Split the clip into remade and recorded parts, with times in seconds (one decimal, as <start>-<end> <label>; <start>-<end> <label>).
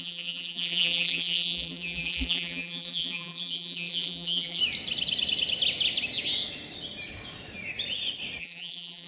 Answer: 0.0-4.6 remade; 4.6-8.4 recorded; 8.4-9.1 remade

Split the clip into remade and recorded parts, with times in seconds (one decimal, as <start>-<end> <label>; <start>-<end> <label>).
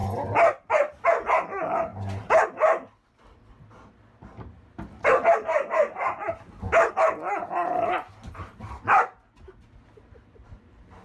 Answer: 0.0-11.0 recorded